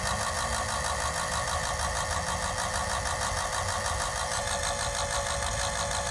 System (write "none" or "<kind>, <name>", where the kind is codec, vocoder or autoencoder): none